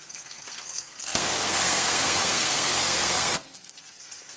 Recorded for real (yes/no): no